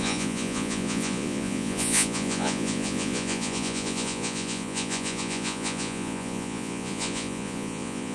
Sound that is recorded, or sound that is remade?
remade